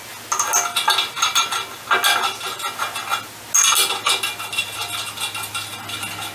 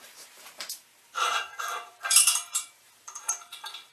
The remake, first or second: second